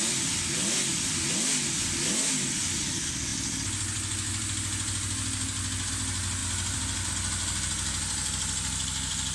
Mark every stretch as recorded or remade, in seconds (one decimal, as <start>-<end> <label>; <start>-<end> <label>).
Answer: 0.0-6.4 recorded; 6.4-7.1 remade; 7.1-9.3 recorded